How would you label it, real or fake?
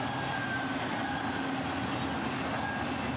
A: real